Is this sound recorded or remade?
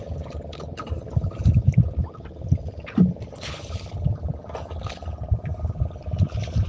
recorded